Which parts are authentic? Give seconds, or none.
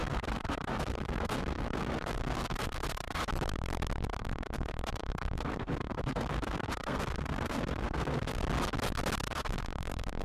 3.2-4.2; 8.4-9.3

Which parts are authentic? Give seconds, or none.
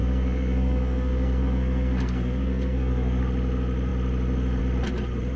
3.2-5.4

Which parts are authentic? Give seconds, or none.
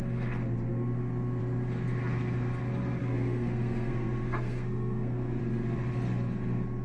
0.0-3.0; 5.4-6.8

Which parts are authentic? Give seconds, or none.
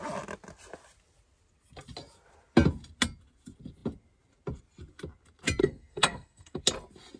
0.0-5.6; 6.6-7.2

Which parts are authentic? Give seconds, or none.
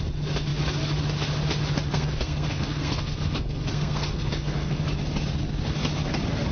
0.0-1.9; 4.8-6.5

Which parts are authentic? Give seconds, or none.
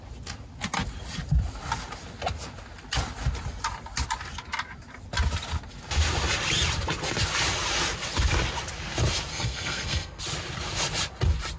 0.0-9.3; 10.2-11.6